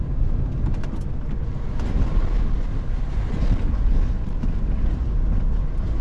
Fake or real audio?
real